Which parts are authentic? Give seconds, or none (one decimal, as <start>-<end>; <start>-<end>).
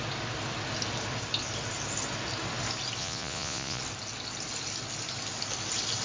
0.0-3.0; 3.8-6.0